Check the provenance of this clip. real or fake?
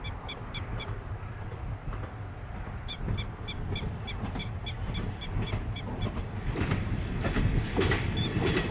real